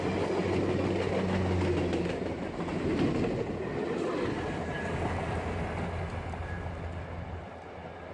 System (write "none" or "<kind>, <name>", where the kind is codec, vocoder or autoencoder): none